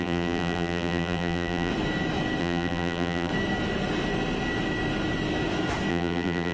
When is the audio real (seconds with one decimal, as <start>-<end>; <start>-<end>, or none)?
1.7-2.4; 3.3-5.9